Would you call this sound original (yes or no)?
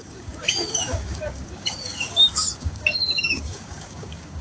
no